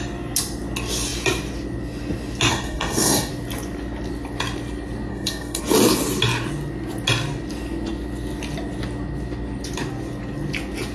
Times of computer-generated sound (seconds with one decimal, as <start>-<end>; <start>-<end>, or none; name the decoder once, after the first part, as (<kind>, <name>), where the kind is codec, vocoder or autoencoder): 2.5-3.3 (codec, SNAC); 5.1-5.6